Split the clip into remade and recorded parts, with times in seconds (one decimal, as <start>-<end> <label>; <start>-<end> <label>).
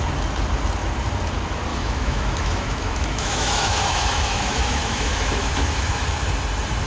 0.0-1.7 recorded; 1.7-5.8 remade; 5.8-6.9 recorded